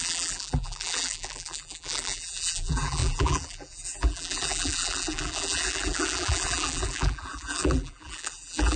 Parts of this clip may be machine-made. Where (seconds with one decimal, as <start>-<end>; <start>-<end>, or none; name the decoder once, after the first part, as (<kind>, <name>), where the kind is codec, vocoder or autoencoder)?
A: 0.0-8.8 (vocoder, BigVGAN v2)